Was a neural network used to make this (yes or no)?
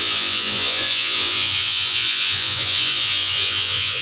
yes